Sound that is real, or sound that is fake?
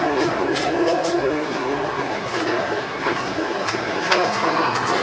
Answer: fake